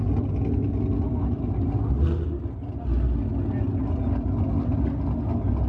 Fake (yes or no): no